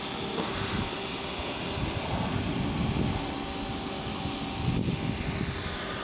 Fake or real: fake